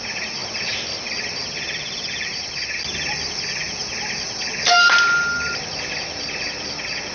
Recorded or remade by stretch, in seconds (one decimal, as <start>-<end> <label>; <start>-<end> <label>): 0.0-7.1 remade